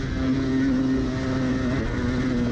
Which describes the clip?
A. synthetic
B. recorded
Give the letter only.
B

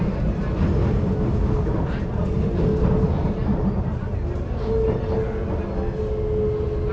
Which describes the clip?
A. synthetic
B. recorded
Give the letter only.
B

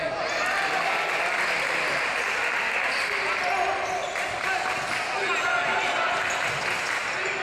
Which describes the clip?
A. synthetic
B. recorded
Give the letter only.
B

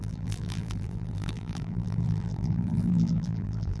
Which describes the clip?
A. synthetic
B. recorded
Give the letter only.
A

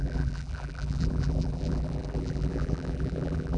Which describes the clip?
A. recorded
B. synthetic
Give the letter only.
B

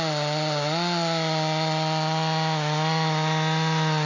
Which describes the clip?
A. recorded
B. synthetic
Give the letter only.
A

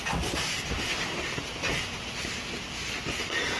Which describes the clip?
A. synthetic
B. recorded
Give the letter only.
B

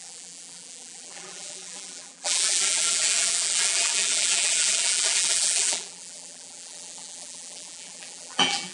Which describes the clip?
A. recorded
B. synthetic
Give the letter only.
B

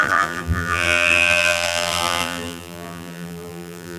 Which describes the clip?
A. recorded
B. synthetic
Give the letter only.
B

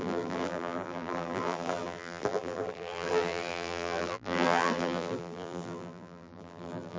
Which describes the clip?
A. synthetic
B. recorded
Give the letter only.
A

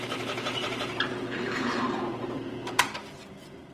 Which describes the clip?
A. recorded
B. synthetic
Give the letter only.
B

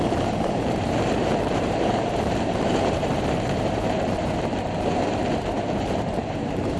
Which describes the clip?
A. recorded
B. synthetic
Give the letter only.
B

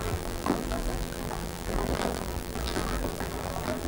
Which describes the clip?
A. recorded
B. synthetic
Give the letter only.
B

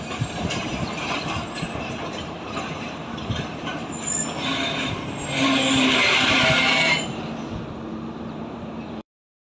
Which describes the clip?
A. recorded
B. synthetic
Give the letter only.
B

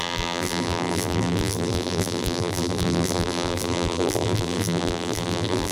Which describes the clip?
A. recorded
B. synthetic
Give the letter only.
B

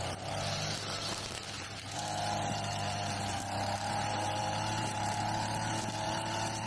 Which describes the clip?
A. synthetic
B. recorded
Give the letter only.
A